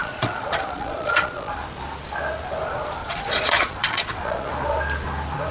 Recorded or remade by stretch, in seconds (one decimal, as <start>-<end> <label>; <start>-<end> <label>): 0.0-1.6 remade; 1.6-3.0 recorded; 3.0-4.5 remade; 4.5-5.5 recorded